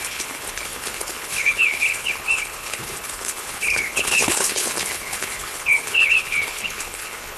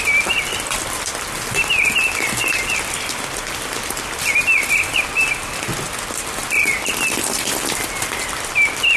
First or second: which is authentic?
second